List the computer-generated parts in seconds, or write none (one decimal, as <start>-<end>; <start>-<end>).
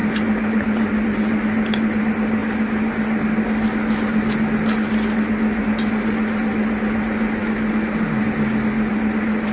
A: none